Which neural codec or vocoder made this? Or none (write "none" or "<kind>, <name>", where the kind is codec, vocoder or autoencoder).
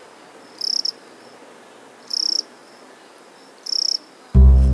none